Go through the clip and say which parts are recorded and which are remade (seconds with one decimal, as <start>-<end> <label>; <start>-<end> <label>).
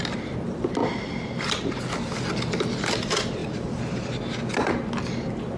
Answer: 0.0-5.6 recorded